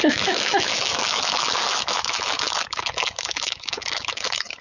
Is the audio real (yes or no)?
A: no